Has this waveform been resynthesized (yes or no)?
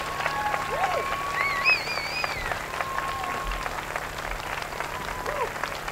no